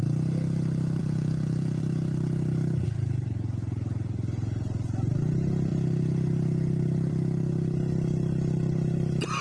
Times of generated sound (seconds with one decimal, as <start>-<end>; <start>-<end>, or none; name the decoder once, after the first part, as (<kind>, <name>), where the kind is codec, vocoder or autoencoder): 1.0-1.8 (vocoder, Vocos)